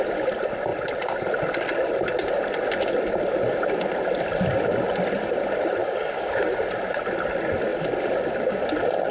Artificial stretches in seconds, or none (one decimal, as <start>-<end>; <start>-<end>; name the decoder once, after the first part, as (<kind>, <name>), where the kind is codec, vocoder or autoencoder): 5.8-6.6 (codec, DAC)

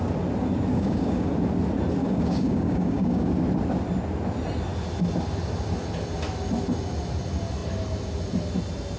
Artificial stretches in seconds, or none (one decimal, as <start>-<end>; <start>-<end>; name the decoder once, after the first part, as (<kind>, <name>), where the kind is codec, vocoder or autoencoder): 0.7-1.3 (codec, DAC); 2.0-3.3

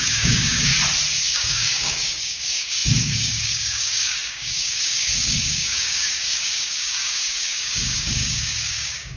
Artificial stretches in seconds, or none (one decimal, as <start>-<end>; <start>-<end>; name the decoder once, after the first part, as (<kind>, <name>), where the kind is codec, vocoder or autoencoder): 0.0-0.7 (codec, DAC); 1.2-9.2

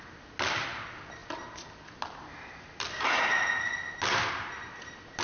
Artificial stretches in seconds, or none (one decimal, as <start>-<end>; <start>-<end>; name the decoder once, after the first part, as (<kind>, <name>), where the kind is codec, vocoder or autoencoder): none

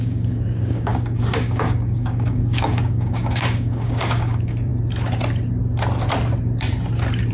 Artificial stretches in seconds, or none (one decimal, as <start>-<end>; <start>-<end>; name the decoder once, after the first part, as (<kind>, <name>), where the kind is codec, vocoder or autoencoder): 0.0-4.7 (codec, DAC)